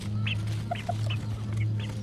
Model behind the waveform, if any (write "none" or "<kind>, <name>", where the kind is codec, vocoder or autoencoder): none